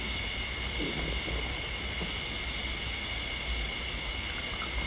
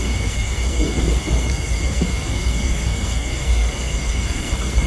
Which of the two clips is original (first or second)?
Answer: first